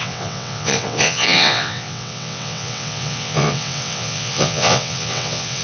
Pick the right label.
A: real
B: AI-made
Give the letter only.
B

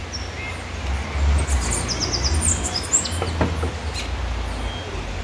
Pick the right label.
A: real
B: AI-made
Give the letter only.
A